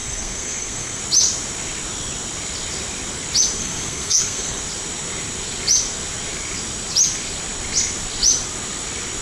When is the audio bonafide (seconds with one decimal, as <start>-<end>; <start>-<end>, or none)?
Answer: 1.0-3.6; 4.6-9.2